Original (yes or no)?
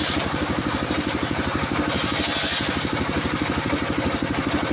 yes